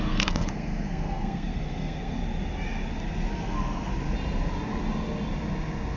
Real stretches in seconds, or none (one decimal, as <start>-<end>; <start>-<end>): 2.2-3.3; 3.9-6.0